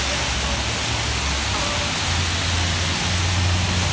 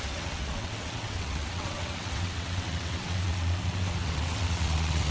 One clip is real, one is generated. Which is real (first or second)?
first